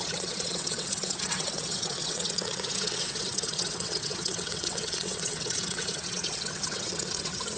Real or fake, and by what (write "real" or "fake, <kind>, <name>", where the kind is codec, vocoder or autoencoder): fake, vocoder, WaveNeXt